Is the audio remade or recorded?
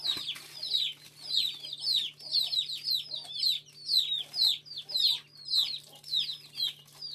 recorded